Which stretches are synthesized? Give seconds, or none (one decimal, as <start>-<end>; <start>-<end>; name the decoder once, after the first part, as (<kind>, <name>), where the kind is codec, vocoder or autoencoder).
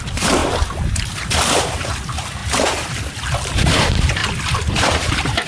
0.0-0.4 (vocoder, BigVGAN v2); 0.9-2.4; 3.5-4.2; 4.8-5.5